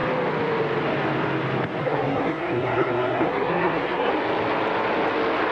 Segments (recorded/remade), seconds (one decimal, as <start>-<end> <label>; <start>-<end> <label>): 0.0-1.8 recorded; 1.8-4.1 remade; 4.1-5.5 recorded